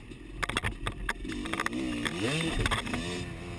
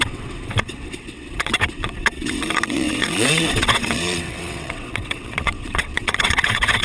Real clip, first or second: first